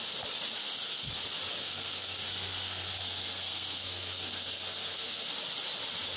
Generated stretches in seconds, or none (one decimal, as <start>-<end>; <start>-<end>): 0.6-1.2; 1.6-5.3